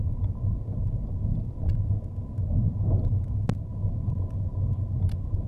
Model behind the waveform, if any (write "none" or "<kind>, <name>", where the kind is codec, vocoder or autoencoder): none